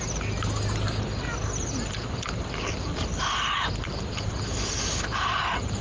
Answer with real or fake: real